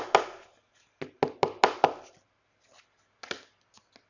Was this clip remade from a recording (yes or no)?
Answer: no